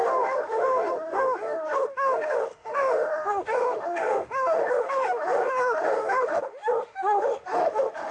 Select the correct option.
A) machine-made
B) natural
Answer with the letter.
A